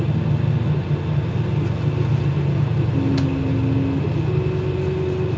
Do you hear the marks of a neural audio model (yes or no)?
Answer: no